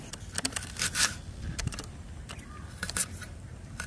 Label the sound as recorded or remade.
remade